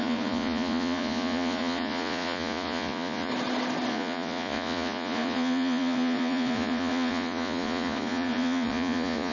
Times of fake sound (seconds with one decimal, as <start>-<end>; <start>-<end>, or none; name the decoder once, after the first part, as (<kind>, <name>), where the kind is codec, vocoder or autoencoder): 0.0-3.3 (vocoder, Vocos); 3.9-9.3